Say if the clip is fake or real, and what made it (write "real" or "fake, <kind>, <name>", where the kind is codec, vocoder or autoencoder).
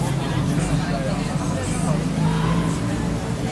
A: real